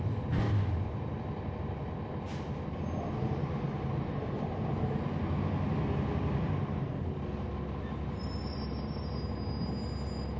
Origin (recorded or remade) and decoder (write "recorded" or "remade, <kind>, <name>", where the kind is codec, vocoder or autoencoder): recorded